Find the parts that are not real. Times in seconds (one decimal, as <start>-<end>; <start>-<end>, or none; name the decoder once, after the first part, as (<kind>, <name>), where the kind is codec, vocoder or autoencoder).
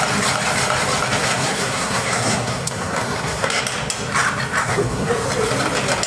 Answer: 1.2-3.6 (codec, SNAC); 4.6-5.1